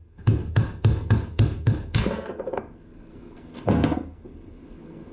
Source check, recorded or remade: remade